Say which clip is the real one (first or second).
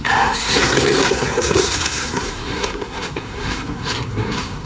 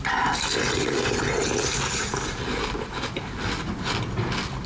second